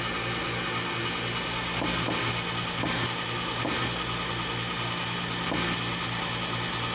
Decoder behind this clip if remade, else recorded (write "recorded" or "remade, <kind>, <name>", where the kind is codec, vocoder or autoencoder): recorded